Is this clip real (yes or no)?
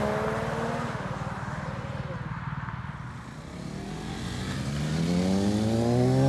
yes